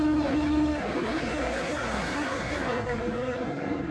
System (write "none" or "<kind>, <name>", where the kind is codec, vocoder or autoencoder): codec, SNAC